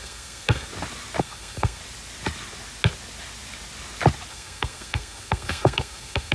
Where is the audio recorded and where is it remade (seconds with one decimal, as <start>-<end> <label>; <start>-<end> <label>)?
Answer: 0.0-0.7 remade; 0.7-1.2 recorded; 1.2-1.8 remade; 1.8-4.3 recorded; 4.3-6.3 remade